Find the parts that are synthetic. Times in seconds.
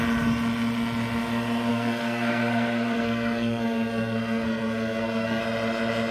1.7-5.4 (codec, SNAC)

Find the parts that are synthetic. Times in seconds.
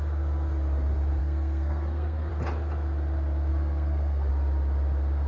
1.2-2.3 (codec, SNAC); 3.5-4.3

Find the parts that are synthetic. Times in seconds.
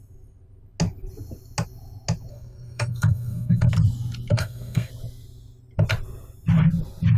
2.3-3.7 (codec, SNAC); 4.3-4.9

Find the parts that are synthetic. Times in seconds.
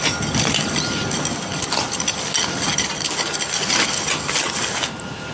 none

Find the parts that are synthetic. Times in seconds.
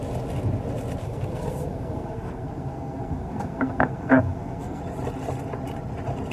1.0-4.8 (codec, SNAC)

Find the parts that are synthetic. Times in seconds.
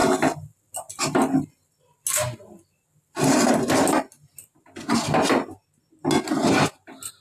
none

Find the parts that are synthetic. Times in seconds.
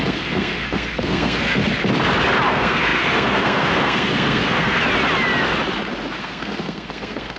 0.0-1.6 (codec, SNAC); 2.5-4.8; 6.2-7.4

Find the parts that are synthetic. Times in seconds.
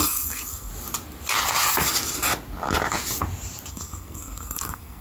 0.0-0.7 (codec, SNAC); 3.7-5.0